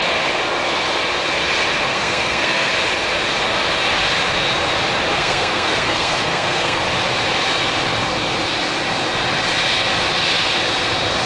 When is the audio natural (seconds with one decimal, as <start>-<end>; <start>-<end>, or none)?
0.0-1.9; 2.7-5.1; 6.8-11.3